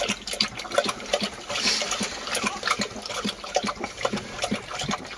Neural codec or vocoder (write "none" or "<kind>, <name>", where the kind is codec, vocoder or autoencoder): none